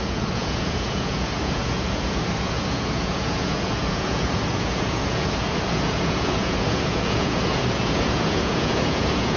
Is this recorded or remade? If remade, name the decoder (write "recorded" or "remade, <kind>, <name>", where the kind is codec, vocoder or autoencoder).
remade, vocoder, Vocos